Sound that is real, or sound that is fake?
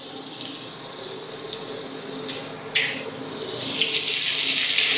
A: real